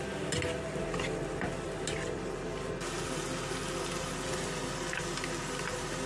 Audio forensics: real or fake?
real